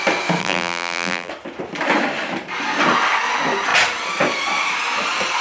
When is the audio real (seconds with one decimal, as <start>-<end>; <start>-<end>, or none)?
0.0-0.4; 1.3-5.4